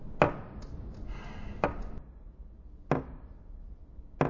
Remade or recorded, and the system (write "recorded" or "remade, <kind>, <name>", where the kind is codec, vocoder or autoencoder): recorded